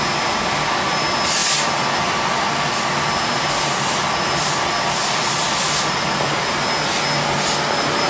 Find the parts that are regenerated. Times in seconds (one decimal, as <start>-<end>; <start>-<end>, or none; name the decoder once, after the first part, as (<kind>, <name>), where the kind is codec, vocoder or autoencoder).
none